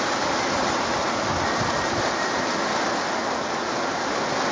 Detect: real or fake real